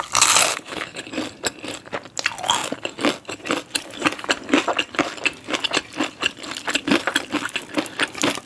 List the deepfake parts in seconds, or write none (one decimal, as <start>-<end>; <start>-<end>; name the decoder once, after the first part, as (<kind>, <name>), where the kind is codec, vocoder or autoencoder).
0.5-1.1 (codec, HILCodec)